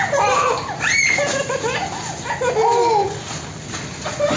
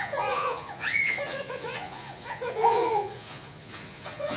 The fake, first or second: second